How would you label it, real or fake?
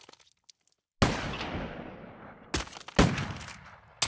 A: real